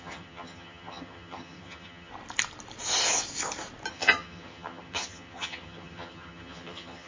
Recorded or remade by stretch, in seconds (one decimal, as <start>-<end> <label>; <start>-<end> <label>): 0.0-2.1 remade; 2.1-3.9 recorded; 3.9-7.1 remade